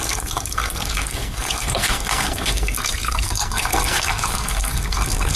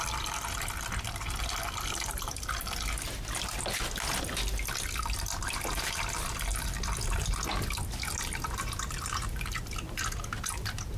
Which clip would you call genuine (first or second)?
second